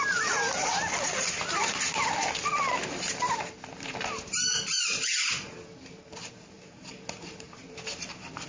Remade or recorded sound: recorded